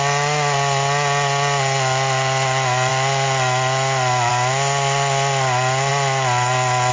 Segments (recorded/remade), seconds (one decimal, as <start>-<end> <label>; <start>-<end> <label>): 0.0-6.9 recorded